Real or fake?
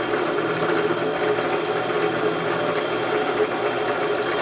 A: real